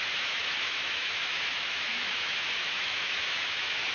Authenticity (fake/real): fake